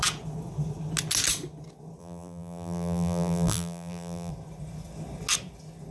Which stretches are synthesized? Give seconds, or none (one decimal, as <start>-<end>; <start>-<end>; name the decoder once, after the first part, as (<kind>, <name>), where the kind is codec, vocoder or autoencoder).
2.0-4.3 (vocoder, BigVGAN v2)